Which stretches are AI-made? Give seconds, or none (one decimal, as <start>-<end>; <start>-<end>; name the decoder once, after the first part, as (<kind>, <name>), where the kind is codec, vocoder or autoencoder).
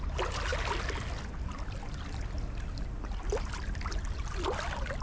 none